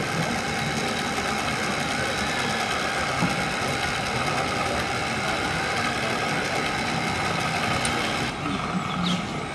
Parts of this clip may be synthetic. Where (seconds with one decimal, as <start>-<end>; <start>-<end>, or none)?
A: none